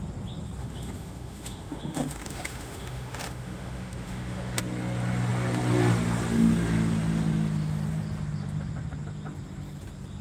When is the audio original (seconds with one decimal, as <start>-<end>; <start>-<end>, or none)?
0.0-0.6; 4.6-10.2

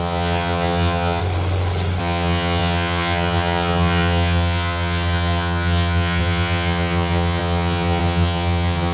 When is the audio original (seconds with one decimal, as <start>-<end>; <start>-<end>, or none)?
1.2-2.0

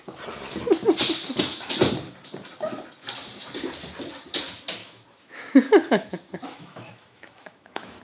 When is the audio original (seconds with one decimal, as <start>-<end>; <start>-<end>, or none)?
0.0-4.8